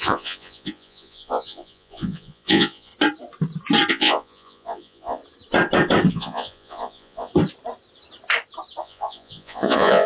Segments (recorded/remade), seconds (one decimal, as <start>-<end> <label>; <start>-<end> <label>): 0.0-2.9 remade; 2.9-3.9 recorded; 3.9-5.2 remade; 5.2-6.1 recorded; 6.1-7.3 remade; 7.3-8.8 recorded; 8.8-10.1 remade